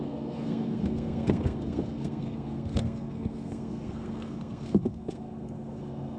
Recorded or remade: remade